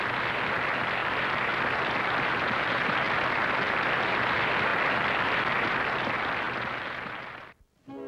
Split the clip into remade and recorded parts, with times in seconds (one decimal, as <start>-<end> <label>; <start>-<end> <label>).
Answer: 0.0-8.1 recorded